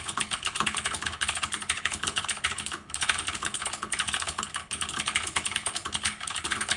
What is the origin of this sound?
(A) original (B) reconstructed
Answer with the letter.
B